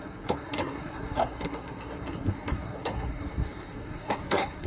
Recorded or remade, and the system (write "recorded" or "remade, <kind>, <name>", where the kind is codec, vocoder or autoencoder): remade, codec, SNAC